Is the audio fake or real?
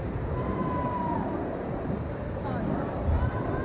real